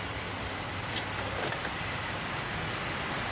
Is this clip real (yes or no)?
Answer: yes